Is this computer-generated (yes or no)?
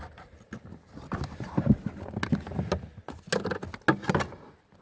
no